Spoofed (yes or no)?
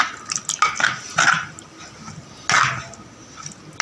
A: no